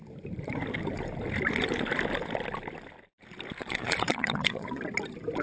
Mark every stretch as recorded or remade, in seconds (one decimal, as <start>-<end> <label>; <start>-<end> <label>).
0.0-3.6 recorded; 3.6-4.8 remade; 4.8-5.4 recorded